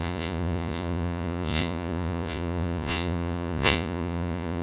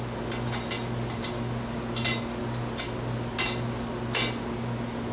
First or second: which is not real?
first